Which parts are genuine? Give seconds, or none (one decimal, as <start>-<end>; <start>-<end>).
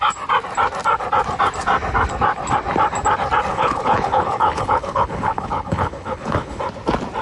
0.0-3.5; 6.6-7.2